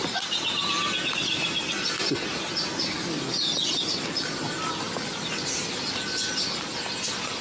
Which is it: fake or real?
real